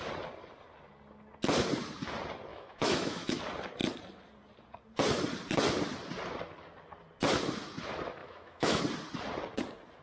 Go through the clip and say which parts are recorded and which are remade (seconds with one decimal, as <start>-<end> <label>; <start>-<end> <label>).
0.0-2.5 recorded; 2.5-3.4 remade; 3.4-8.2 recorded; 8.2-8.8 remade; 8.8-10.0 recorded